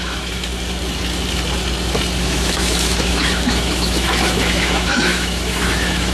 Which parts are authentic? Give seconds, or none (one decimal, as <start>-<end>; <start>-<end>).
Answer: 0.5-2.2